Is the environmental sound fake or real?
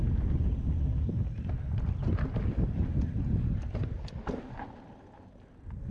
real